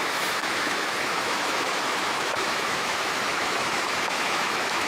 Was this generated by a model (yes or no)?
yes